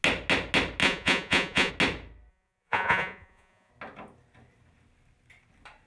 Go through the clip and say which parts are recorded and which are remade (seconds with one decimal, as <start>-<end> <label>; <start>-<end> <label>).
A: 0.0-0.8 recorded; 0.8-1.7 remade; 1.7-2.3 recorded; 2.3-3.7 remade; 3.7-5.9 recorded